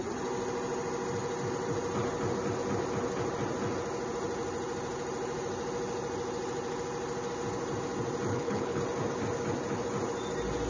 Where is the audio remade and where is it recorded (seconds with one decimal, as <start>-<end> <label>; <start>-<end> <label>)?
0.0-8.3 recorded; 8.3-8.8 remade; 8.8-10.7 recorded